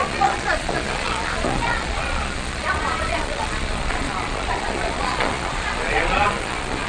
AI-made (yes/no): yes